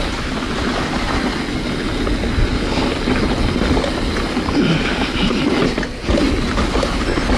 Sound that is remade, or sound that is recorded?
recorded